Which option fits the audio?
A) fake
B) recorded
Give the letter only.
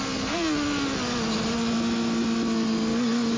B